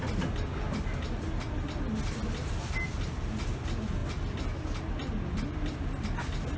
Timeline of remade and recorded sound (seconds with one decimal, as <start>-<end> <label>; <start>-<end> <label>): 0.0-6.6 recorded

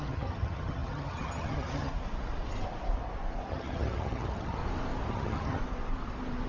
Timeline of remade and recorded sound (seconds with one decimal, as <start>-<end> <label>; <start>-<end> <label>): 0.0-1.9 remade; 1.9-3.5 recorded; 3.5-4.6 remade; 4.6-5.1 recorded; 5.1-5.6 remade; 5.6-6.5 recorded

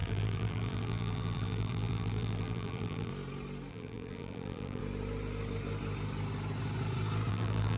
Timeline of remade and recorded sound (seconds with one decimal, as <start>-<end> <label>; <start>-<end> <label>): 0.0-3.1 remade; 3.1-3.7 recorded; 3.7-4.8 remade; 4.8-7.3 recorded; 7.3-7.8 remade

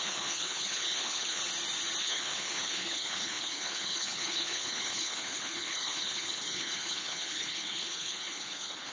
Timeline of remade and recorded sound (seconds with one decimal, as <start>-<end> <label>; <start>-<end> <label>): 0.0-1.4 remade; 1.4-2.0 recorded; 2.0-8.9 remade